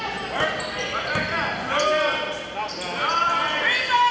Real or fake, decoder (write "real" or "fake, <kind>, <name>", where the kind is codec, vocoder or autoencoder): real